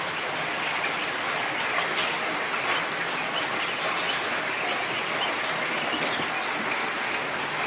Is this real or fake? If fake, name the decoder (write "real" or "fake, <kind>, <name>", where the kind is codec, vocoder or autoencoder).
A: real